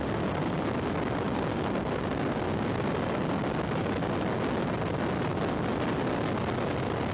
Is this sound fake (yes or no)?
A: no